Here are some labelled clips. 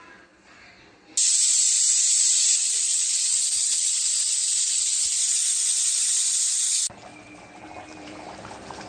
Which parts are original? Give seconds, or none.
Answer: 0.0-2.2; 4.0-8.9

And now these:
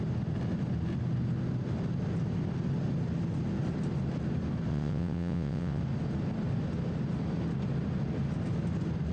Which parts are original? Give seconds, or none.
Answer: 0.0-4.7; 5.8-9.1

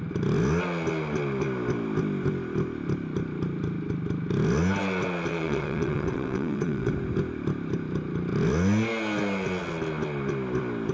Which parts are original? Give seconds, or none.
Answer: 0.0-5.3; 6.9-10.9

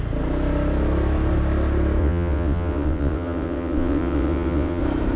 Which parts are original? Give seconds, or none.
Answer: 0.0-2.0; 4.8-5.2